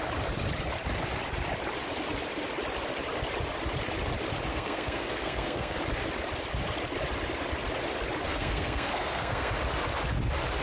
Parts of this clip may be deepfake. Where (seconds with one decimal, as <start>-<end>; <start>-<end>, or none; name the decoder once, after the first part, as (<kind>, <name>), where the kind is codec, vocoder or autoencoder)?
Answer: 4.5-5.8 (codec, SNAC); 8.3-9.5